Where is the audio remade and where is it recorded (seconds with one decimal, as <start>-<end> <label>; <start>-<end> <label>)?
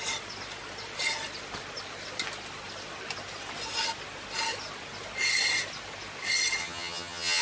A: 0.0-6.6 recorded; 6.6-7.4 remade